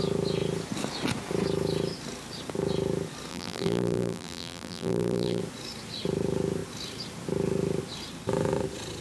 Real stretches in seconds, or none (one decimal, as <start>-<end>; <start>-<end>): 0.0-3.3; 5.4-9.0